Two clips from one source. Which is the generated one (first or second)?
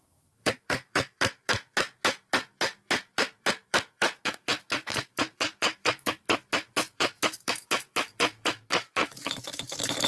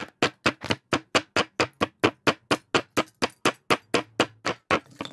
first